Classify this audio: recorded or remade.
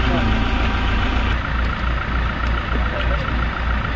recorded